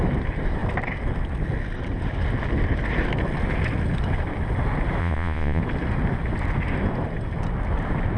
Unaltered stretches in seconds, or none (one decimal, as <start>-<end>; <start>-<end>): 0.0-5.0; 5.6-8.2